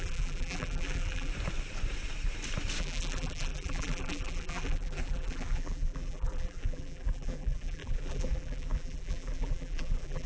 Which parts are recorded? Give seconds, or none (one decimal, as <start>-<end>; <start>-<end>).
1.3-2.8